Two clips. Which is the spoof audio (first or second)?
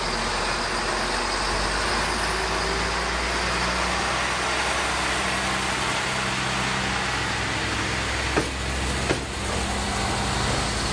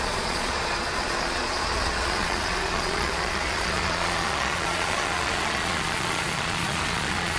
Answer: second